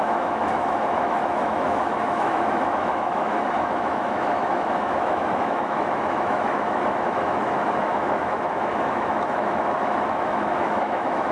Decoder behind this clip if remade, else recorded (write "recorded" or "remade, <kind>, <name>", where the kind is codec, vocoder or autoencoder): remade, autoencoder, DAC-VAE